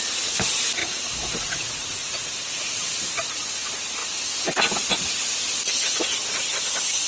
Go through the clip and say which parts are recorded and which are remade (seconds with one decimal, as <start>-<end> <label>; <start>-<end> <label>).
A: 0.0-7.1 recorded